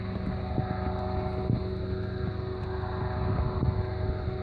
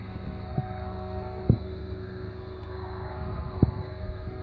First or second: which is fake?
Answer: second